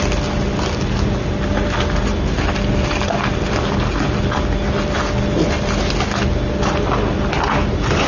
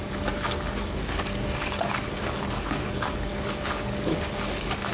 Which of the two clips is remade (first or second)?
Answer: second